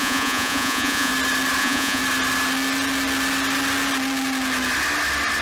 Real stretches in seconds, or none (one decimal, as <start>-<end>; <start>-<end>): 1.1-1.6; 2.0-5.4